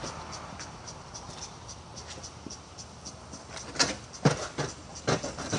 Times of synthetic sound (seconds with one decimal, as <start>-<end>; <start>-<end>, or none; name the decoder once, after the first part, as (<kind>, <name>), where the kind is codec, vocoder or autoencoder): none